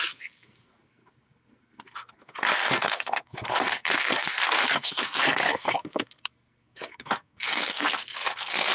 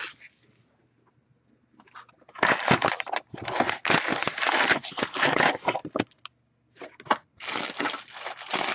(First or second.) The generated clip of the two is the first